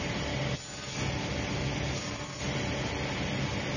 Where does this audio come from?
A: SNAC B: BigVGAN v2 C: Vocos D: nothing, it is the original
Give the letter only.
D